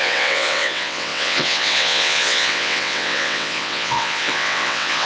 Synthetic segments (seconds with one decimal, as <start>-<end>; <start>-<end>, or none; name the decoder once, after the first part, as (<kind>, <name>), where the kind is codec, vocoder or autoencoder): 0.0-5.1 (vocoder, WaveNeXt)